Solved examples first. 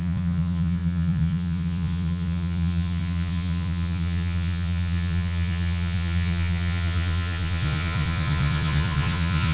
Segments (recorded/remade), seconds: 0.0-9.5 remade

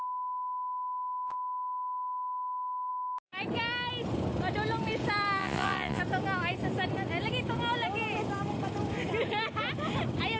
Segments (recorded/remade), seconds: 0.0-5.4 recorded; 5.4-6.0 remade; 6.0-10.4 recorded

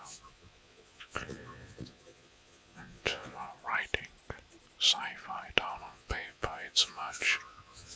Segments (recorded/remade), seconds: 0.0-3.5 remade; 3.5-5.7 recorded; 5.7-8.0 remade

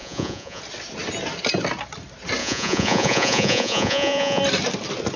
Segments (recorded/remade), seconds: 0.0-0.6 remade; 0.6-2.4 recorded; 2.4-4.4 remade; 4.4-5.2 recorded

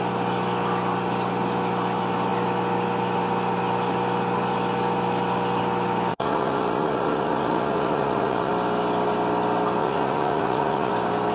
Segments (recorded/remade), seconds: 0.0-6.1 recorded; 6.1-8.5 remade; 8.5-9.8 recorded; 9.8-10.9 remade; 10.9-11.3 recorded

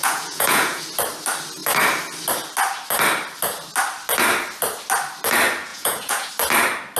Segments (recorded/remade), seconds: 0.0-0.8 remade; 0.8-5.7 recorded; 5.7-6.3 remade; 6.3-7.0 recorded

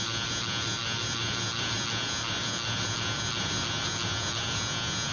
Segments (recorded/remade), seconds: 0.0-5.1 recorded

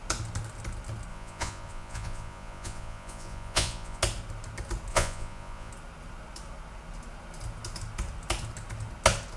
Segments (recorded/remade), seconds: 0.0-1.1 recorded; 1.1-4.0 remade; 4.0-4.9 recorded; 4.9-5.7 remade; 5.7-9.4 recorded